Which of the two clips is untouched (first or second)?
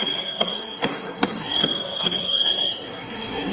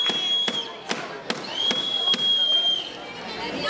second